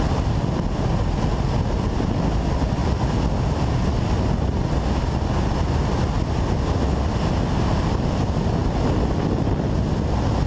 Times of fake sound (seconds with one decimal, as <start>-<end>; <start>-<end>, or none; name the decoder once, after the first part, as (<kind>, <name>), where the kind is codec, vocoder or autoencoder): none